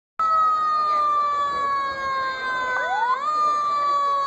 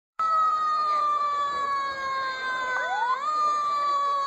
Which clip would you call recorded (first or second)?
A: first